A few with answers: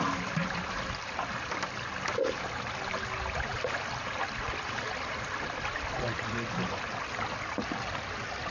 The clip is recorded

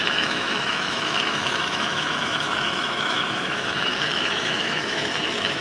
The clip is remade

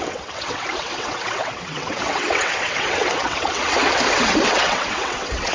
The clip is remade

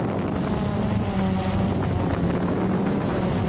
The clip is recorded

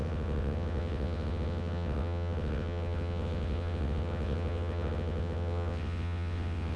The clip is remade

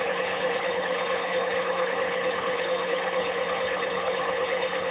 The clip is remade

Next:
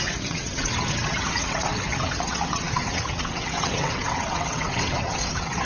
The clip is remade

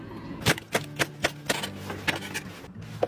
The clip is recorded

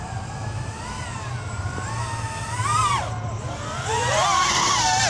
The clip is recorded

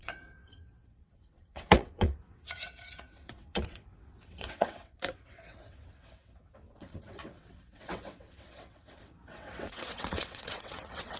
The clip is remade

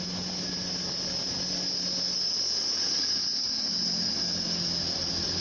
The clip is recorded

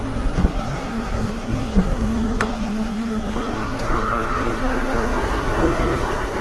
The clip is remade